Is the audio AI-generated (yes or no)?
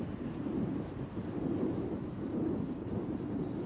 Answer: yes